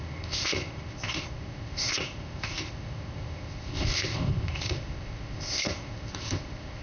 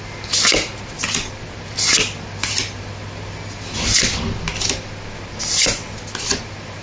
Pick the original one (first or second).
second